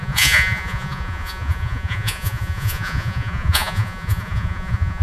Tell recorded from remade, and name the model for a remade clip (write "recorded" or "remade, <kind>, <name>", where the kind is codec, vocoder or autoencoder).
remade, vocoder, Vocos